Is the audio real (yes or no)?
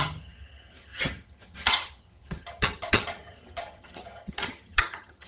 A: no